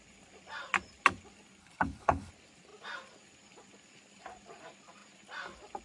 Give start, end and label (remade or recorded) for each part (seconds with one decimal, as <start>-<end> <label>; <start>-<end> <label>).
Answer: 0.0-1.6 recorded; 1.6-2.3 remade; 2.3-5.8 recorded